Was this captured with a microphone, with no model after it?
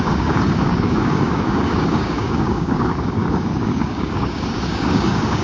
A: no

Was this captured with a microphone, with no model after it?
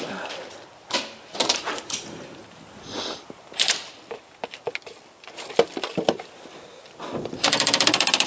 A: yes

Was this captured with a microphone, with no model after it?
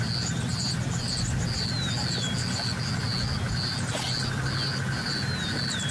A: yes